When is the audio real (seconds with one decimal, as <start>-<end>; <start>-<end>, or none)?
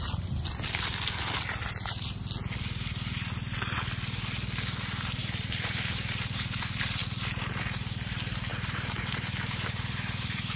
0.0-5.2; 6.6-8.5